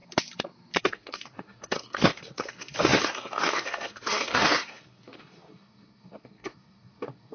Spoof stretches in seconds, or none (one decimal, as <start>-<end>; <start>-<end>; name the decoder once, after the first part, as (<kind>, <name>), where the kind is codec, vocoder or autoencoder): 0.8-7.3 (codec, SNAC)